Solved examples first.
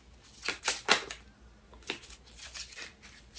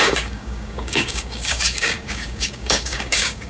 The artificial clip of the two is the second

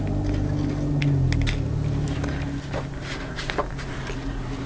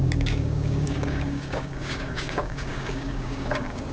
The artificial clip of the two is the second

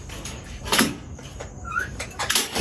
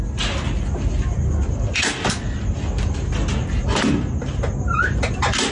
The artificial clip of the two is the first